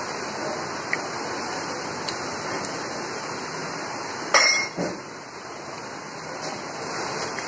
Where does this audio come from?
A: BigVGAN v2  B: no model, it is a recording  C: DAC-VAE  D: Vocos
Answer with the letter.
B